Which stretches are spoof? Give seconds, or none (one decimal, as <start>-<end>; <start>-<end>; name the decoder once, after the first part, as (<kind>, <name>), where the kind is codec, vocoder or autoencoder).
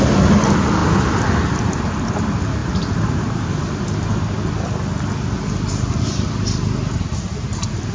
none